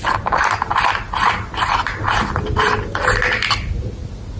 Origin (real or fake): real